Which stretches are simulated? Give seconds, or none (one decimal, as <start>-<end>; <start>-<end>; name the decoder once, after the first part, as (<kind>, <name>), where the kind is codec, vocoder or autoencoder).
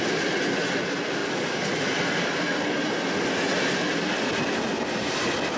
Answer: none